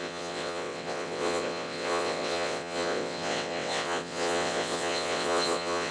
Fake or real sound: fake